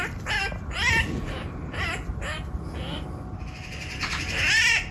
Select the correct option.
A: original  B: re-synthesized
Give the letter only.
A